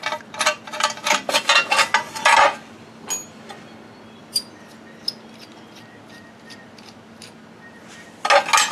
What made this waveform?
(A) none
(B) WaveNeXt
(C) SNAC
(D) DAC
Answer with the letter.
A